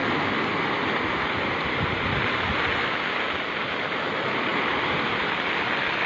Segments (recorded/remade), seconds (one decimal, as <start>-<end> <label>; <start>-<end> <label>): 0.0-6.1 recorded

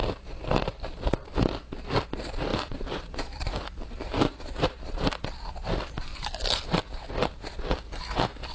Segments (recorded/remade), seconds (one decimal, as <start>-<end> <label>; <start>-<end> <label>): 0.0-8.5 recorded

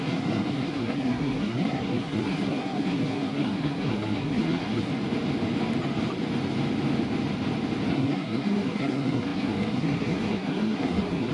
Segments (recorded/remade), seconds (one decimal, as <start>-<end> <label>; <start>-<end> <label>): 0.0-4.9 remade; 4.9-7.9 recorded; 7.9-11.3 remade

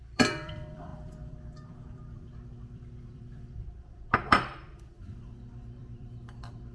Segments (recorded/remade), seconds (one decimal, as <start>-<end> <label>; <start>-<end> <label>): 0.0-6.7 remade

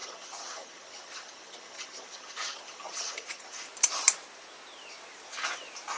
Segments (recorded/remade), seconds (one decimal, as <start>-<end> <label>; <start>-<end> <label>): 0.0-3.6 remade; 3.6-6.0 recorded